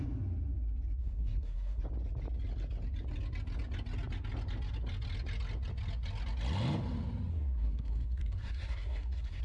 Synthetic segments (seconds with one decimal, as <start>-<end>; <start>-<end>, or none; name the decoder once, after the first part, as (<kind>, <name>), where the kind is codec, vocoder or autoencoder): 1.0-1.8 (codec, SNAC); 7.3-9.4